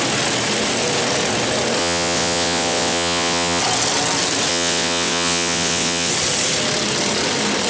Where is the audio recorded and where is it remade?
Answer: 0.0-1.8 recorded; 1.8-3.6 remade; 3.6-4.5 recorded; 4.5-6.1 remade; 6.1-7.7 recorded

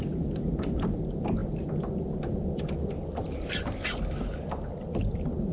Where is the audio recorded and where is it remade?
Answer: 0.0-5.5 recorded

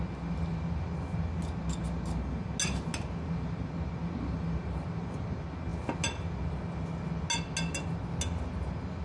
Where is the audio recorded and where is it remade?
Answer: 0.0-9.0 recorded

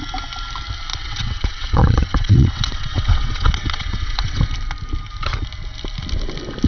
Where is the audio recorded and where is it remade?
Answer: 0.0-0.9 recorded; 0.9-4.4 remade; 4.4-6.7 recorded

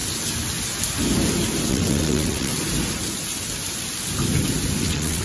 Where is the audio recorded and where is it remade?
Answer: 0.0-1.7 recorded; 1.7-2.5 remade; 2.5-4.8 recorded; 4.8-5.2 remade